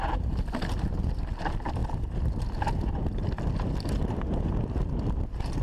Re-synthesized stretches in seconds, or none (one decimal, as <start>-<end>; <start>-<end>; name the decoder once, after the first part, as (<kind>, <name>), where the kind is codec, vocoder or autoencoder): 1.8-2.4 (vocoder, BigVGAN v2)